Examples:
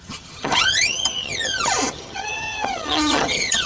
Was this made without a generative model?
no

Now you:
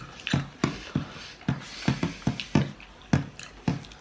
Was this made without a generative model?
yes